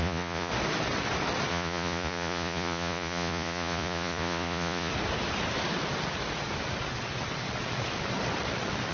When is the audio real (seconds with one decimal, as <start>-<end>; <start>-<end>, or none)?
0.5-1.5; 4.9-8.9

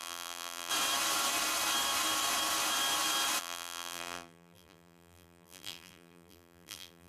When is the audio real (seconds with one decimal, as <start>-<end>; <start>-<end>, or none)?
0.7-3.4